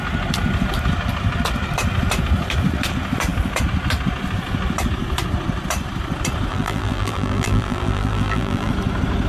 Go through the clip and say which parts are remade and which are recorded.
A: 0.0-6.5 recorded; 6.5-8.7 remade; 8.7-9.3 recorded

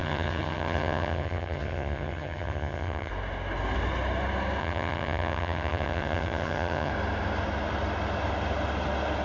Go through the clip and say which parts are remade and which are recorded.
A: 0.0-3.1 remade; 3.1-4.6 recorded; 4.6-6.9 remade; 6.9-9.2 recorded

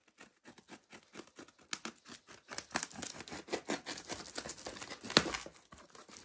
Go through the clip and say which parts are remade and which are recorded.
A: 0.0-6.2 recorded

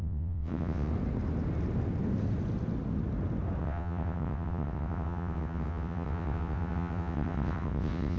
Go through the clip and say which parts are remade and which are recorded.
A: 0.0-0.9 remade; 0.9-3.6 recorded; 3.6-8.2 remade

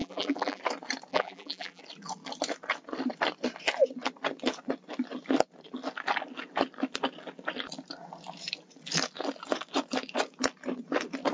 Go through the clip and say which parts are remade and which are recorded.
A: 0.0-0.6 remade; 0.6-1.1 recorded; 1.1-1.8 remade; 1.8-11.3 recorded

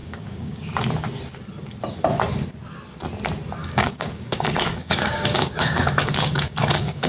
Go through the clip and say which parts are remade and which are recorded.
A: 0.0-0.8 remade; 0.8-3.6 recorded; 3.6-7.1 remade